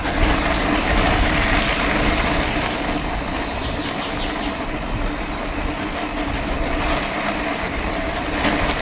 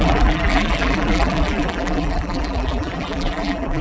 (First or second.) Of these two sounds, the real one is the first